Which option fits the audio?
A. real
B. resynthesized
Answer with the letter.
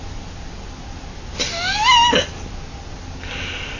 A